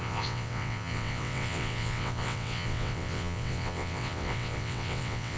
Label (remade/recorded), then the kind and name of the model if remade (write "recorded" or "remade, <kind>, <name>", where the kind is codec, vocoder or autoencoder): remade, vocoder, WaveNeXt